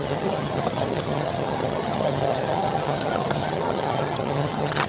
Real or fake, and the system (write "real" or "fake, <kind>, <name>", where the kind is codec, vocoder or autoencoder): fake, vocoder, HiFi-GAN